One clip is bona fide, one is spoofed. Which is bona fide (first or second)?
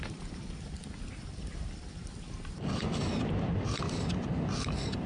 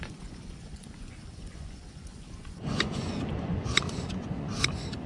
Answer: first